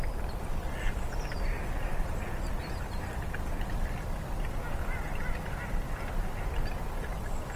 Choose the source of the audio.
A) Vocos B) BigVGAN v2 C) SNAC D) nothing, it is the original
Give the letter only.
D